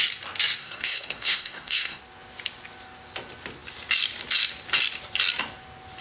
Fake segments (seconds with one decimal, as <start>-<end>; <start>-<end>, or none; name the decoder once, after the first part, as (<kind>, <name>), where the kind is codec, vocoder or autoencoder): 0.6-2.0 (codec, SNAC)